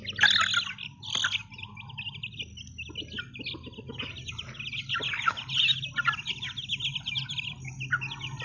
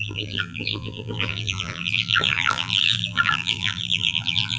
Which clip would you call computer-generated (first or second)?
second